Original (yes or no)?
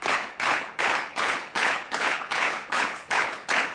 no